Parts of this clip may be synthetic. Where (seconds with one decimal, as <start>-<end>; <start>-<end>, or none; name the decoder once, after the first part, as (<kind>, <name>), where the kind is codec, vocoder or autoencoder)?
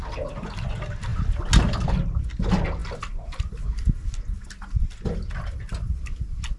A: none